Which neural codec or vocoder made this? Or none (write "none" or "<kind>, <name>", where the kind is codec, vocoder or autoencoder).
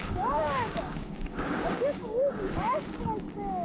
codec, DAC